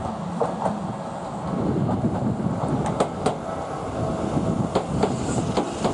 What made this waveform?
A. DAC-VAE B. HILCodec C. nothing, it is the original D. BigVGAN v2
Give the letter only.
C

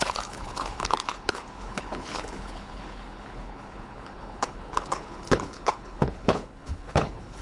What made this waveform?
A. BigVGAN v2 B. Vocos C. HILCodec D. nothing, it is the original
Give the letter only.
C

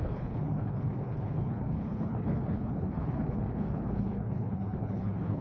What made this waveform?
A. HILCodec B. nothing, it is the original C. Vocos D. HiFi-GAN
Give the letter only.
A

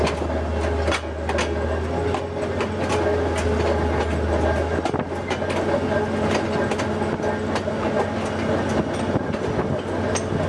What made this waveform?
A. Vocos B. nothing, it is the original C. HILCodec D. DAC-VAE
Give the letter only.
B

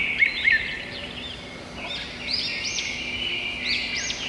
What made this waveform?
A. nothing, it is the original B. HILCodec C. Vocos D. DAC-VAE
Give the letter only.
A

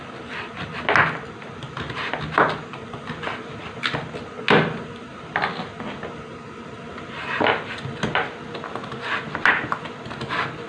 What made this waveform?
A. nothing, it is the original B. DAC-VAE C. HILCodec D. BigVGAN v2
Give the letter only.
A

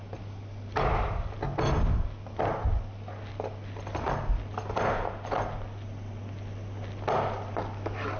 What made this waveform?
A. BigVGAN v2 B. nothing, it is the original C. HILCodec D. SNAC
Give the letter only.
B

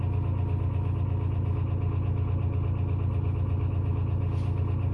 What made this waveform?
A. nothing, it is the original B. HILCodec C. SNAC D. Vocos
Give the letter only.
A